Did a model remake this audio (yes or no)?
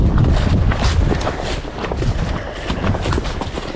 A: no